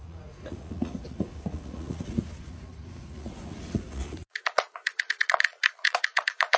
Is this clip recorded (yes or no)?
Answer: no